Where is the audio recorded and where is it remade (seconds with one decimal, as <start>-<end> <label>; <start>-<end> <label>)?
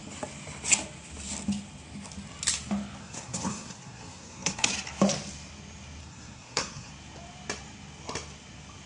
0.0-3.0 recorded; 3.0-4.7 remade; 4.7-6.0 recorded; 6.0-6.9 remade; 6.9-8.9 recorded